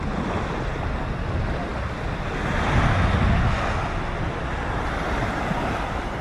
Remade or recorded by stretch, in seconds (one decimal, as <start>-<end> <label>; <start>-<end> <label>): 0.0-6.2 recorded